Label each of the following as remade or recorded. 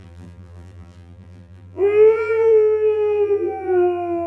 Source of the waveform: remade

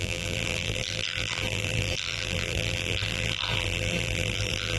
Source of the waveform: remade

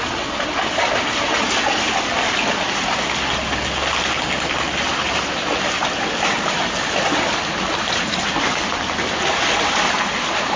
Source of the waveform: recorded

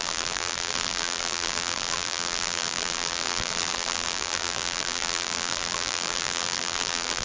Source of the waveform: remade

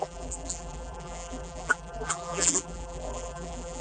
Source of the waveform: remade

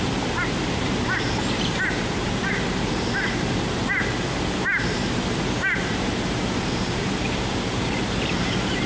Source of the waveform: remade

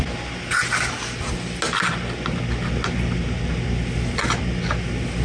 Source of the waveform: recorded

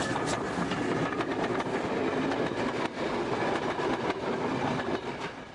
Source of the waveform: recorded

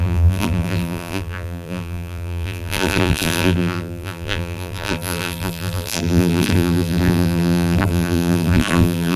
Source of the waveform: remade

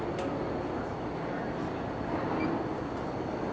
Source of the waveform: recorded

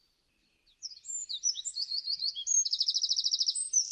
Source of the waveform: remade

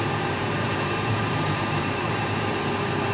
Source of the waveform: remade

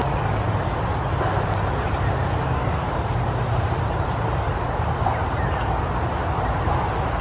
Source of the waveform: recorded